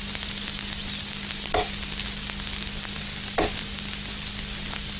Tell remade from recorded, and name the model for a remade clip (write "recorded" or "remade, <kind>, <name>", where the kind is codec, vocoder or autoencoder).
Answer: recorded